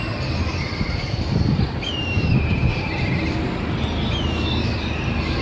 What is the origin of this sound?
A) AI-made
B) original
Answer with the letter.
A